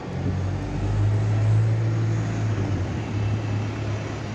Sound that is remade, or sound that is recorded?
recorded